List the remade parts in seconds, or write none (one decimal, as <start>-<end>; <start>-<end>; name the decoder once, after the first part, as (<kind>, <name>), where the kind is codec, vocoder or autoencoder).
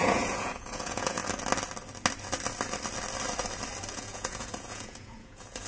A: 0.0-1.2 (vocoder, Vocos); 3.9-5.7